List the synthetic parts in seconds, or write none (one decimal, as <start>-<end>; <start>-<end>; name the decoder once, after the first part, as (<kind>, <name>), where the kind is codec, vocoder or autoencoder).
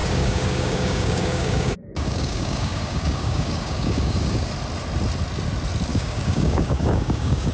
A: 0.0-4.5 (codec, DAC); 5.9-7.5